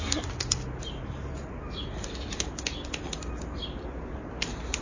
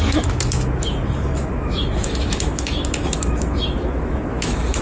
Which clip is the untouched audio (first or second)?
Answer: first